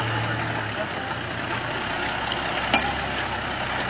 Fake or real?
real